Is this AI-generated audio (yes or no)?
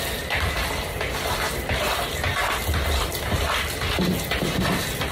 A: no